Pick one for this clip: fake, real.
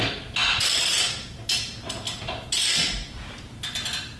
real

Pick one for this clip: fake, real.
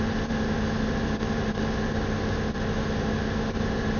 real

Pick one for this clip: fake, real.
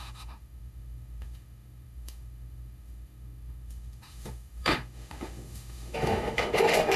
fake